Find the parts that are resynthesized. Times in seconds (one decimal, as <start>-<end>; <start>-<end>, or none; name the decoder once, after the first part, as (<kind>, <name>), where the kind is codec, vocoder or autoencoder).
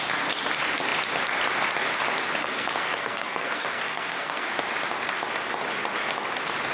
2.4-4.5 (codec, SNAC)